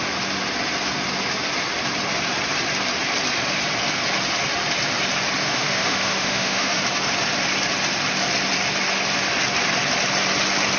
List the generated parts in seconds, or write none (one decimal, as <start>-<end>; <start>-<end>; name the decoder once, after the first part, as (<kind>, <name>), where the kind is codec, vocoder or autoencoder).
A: 5.4-6.8 (autoencoder, DAC-VAE)